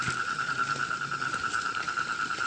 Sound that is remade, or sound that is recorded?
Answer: recorded